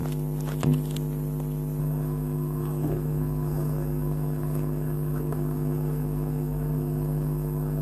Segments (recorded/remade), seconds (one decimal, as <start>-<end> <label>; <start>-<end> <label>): 0.0-1.8 recorded; 1.8-7.8 remade